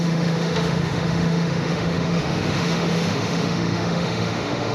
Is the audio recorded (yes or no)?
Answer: no